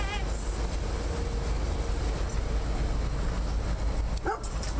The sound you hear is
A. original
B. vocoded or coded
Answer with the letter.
A